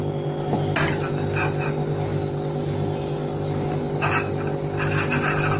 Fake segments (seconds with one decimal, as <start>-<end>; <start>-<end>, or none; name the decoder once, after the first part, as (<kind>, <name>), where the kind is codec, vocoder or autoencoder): none